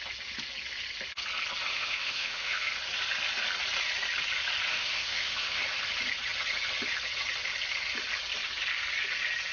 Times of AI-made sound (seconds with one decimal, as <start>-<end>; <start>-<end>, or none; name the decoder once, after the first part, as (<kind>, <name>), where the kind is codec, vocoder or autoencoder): 1.7-2.7 (autoencoder, DAC-VAE); 4.7-5.6